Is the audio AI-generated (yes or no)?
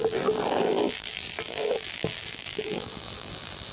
yes